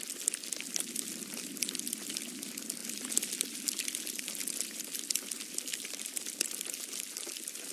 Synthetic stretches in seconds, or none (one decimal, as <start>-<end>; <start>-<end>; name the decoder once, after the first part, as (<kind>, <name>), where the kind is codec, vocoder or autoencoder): 5.7-6.2 (vocoder, BigVGAN v2)